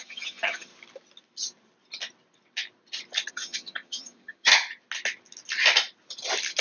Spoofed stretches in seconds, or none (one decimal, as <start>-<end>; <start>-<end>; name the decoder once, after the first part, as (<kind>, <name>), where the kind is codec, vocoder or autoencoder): 0.0-0.7 (vocoder, HiFi-GAN); 3.3-4.5